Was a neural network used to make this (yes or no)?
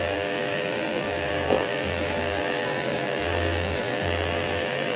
yes